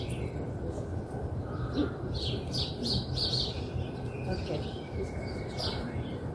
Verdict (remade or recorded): recorded